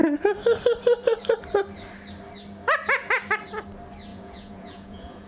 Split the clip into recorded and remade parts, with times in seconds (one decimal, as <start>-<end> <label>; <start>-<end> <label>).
0.0-4.1 recorded; 4.1-5.3 remade